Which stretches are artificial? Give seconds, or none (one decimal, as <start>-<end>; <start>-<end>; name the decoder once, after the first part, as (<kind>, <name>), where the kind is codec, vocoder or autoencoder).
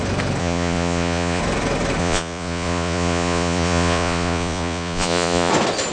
0.4-1.4 (vocoder, Vocos); 2.0-5.5